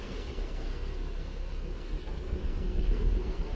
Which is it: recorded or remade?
remade